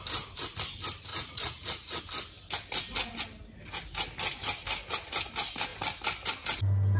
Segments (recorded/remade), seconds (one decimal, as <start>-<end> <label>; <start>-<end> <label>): 0.0-1.1 recorded; 1.1-2.0 remade; 2.0-7.0 recorded